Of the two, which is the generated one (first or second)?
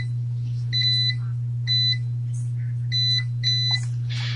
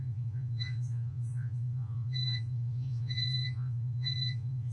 second